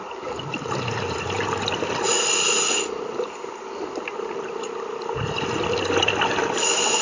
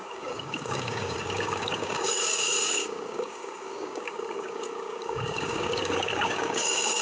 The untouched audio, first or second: first